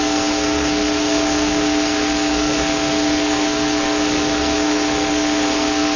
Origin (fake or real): fake